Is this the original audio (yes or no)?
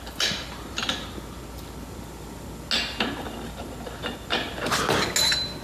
yes